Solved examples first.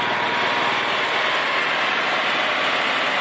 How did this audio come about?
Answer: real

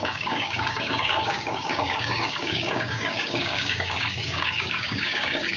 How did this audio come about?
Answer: fake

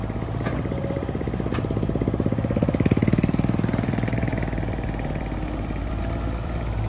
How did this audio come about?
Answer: fake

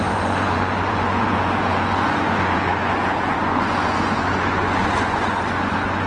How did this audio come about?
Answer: fake